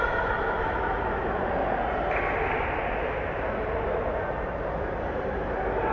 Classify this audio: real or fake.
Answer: fake